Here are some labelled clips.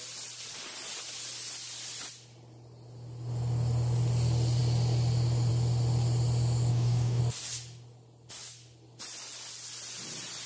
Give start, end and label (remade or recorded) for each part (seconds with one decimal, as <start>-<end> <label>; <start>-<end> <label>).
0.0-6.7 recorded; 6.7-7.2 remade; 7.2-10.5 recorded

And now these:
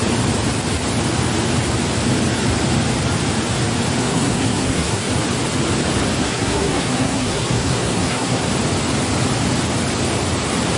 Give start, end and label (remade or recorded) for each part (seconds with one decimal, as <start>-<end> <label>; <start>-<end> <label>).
0.0-4.0 recorded; 4.0-5.1 remade; 5.1-6.2 recorded; 6.2-8.5 remade; 8.5-10.8 recorded

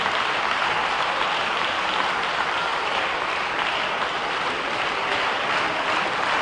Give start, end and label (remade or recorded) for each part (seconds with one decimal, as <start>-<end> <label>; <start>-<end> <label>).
0.0-6.4 remade

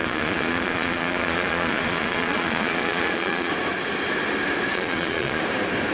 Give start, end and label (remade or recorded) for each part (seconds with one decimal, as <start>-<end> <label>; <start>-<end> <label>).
0.0-3.5 remade; 3.5-4.7 recorded; 4.7-5.4 remade; 5.4-5.9 recorded